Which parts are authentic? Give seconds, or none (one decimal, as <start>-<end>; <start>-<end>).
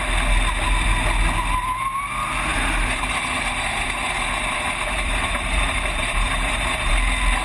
0.0-2.5; 6.9-7.4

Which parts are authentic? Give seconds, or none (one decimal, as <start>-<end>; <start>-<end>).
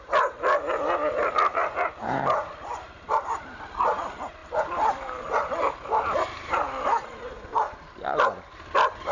0.0-9.1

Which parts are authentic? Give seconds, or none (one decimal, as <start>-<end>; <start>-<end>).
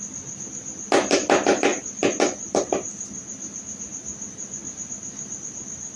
0.0-6.0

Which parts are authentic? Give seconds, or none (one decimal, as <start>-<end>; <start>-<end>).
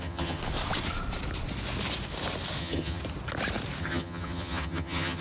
0.4-2.6; 3.0-3.8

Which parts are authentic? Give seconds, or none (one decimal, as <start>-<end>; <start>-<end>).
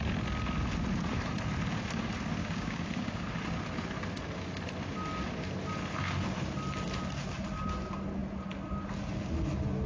0.0-2.4; 3.2-9.9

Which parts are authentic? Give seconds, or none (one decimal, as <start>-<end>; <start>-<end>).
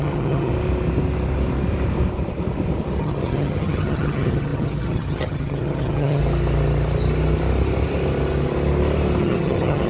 0.5-3.0; 6.2-9.2